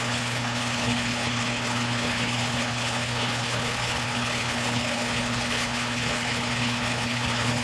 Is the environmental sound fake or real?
fake